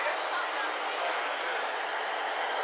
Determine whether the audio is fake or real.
real